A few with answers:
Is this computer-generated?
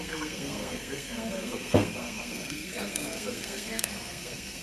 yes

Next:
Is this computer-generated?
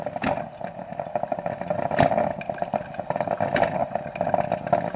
no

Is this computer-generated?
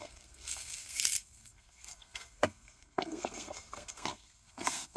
yes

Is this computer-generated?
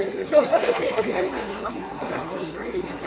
yes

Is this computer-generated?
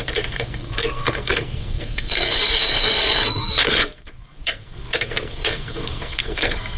yes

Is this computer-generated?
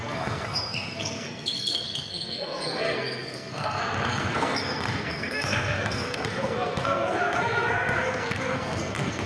yes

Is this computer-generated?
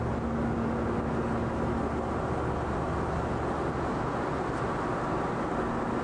no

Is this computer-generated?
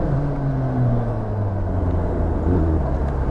no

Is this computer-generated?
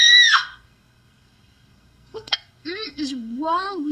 yes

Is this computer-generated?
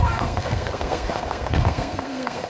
yes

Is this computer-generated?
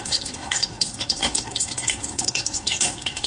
yes